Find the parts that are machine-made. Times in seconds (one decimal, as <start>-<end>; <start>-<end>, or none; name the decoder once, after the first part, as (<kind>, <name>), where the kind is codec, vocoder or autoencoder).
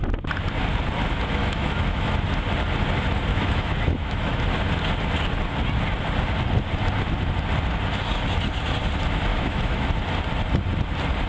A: 1.4-2.1 (autoencoder, DAC-VAE); 3.3-4.4; 9.3-9.9